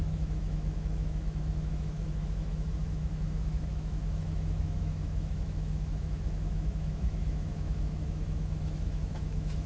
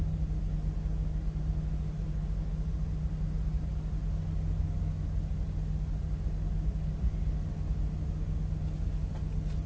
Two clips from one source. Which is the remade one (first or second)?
first